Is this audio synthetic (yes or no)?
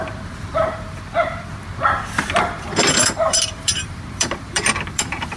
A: yes